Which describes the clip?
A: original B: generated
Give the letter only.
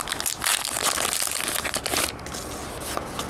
A